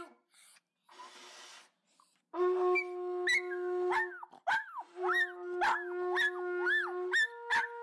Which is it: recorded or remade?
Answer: recorded